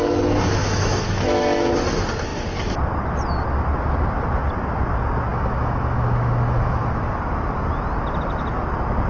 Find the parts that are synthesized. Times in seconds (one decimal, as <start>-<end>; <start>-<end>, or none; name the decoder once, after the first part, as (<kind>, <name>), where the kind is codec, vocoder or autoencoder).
0.6-1.7 (autoencoder, DAC-VAE); 5.3-6.8